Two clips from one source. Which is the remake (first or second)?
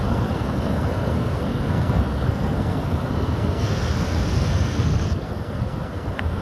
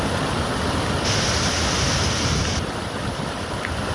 first